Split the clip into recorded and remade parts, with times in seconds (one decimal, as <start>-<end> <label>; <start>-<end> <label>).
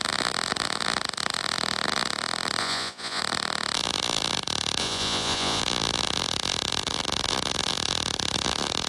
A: 0.0-2.6 recorded; 2.6-3.2 remade; 3.2-4.8 recorded; 4.8-5.6 remade; 5.6-8.9 recorded